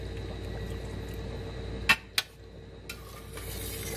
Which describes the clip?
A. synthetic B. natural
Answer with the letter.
B